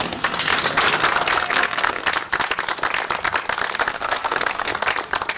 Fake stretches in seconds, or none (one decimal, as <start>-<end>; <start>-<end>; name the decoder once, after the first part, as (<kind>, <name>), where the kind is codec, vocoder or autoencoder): 0.0-0.5 (codec, SNAC); 1.5-2.0; 3.9-4.7